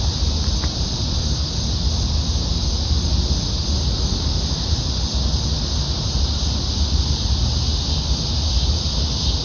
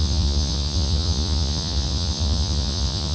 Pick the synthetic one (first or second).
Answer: second